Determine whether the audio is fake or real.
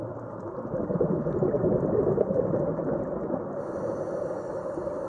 real